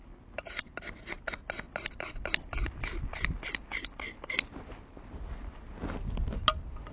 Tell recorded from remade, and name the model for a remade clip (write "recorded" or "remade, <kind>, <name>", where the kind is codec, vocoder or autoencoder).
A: recorded